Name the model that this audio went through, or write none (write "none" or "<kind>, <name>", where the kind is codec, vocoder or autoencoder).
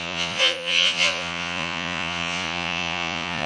vocoder, Vocos